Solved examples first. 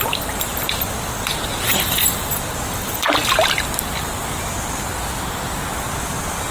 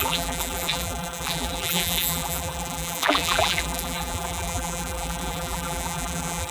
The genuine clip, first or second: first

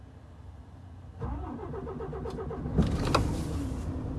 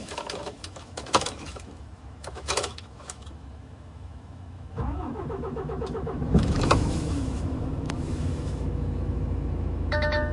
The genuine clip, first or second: first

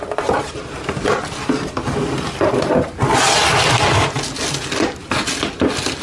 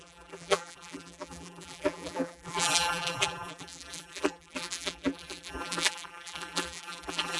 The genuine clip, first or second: first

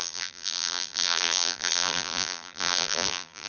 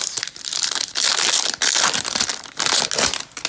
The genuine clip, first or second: second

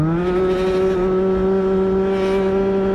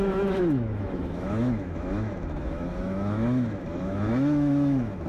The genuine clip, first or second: first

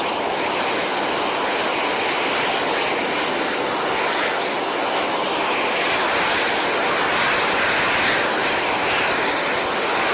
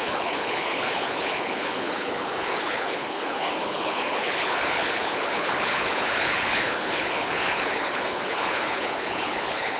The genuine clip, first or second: first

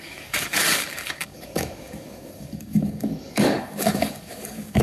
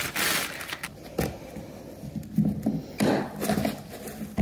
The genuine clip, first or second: second